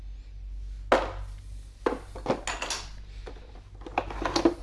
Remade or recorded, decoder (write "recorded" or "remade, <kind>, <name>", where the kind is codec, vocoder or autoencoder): recorded